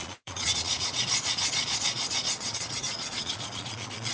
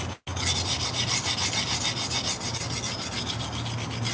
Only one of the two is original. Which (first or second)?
second